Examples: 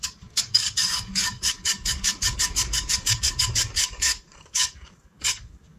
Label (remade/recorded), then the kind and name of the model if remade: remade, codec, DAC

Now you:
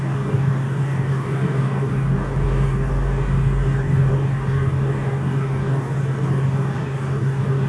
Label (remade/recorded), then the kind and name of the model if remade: remade, codec, DAC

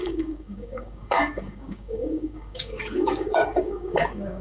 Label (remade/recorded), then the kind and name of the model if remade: remade, codec, DAC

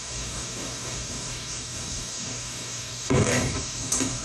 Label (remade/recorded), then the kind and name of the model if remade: remade, codec, DAC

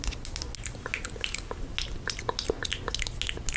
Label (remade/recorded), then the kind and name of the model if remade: recorded